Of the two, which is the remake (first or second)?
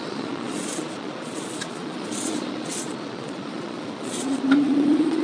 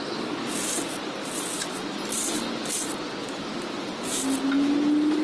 first